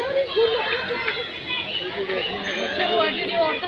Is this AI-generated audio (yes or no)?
yes